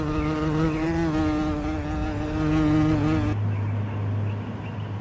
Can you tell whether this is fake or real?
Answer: real